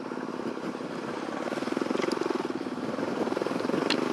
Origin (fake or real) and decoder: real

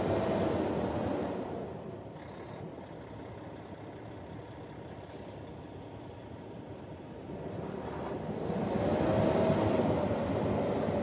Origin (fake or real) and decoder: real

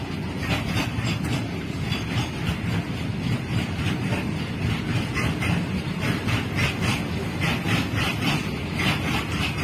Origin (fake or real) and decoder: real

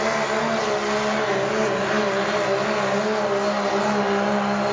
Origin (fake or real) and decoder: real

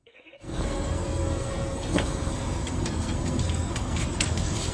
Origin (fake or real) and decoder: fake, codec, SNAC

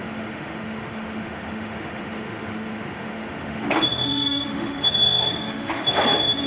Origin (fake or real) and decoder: fake, autoencoder, DAC-VAE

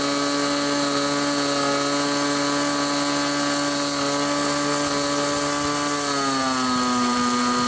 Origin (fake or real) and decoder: real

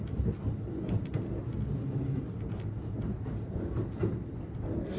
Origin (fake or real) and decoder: real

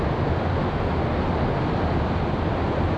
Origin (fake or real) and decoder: real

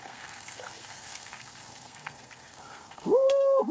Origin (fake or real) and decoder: fake, codec, SNAC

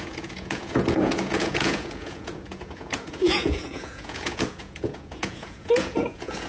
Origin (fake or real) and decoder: fake, vocoder, Vocos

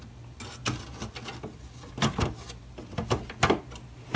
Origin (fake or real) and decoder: real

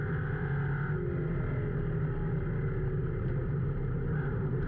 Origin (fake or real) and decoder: real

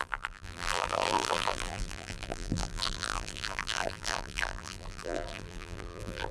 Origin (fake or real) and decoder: fake, vocoder, BigVGAN v2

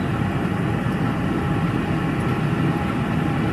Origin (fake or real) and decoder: real